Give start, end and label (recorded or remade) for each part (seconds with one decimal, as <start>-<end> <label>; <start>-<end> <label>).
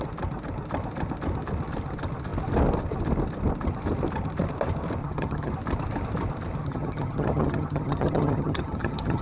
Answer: 0.0-5.0 recorded; 5.0-5.5 remade; 5.5-6.6 recorded; 6.6-9.2 remade